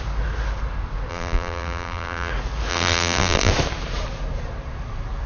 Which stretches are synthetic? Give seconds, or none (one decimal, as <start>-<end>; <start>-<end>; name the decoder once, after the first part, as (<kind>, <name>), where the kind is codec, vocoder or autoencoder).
1.1-2.3 (vocoder, BigVGAN v2); 2.7-3.5